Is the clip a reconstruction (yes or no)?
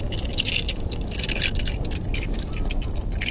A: no